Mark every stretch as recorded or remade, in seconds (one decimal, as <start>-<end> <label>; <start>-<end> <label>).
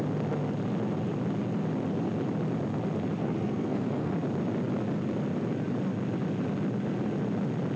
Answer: 0.0-3.2 recorded; 3.2-4.1 remade; 4.1-7.8 recorded